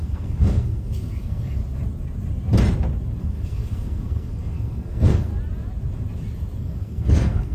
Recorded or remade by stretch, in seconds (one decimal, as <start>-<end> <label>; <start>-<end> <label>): 0.0-1.6 remade; 1.6-3.2 recorded; 3.2-5.3 remade; 5.3-6.6 recorded; 6.6-7.5 remade